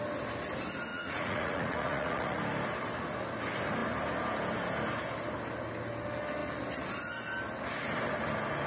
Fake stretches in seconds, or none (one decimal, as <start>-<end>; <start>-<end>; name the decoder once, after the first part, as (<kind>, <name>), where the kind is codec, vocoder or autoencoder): 0.9-2.4 (vocoder, Vocos)